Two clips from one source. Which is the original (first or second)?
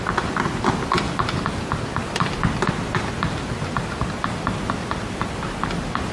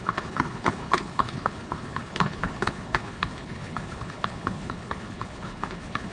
first